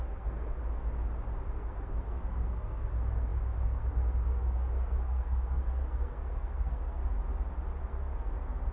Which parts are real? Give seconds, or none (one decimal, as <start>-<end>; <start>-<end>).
0.6-1.5; 7.0-7.8